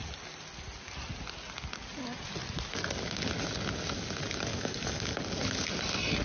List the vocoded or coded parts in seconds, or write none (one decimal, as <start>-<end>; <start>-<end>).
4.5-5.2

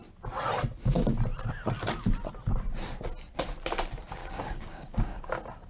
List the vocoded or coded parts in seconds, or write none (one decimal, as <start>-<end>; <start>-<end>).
4.2-5.2

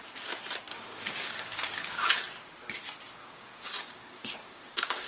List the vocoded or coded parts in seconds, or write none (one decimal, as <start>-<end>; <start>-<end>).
0.7-2.1; 3.2-5.1

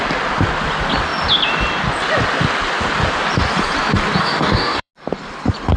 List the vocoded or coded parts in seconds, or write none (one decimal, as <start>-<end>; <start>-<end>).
4.2-4.9

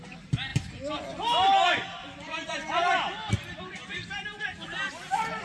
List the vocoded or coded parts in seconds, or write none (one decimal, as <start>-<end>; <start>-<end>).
none

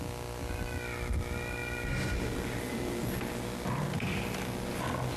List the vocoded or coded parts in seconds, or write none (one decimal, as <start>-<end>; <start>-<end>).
none